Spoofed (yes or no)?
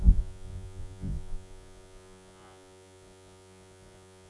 yes